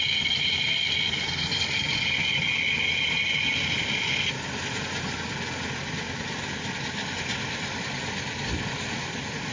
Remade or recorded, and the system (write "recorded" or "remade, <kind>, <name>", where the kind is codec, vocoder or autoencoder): recorded